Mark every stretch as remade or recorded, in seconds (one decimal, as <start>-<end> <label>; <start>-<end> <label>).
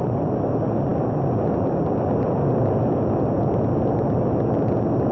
0.0-5.1 recorded